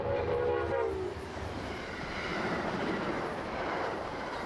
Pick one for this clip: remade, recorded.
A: remade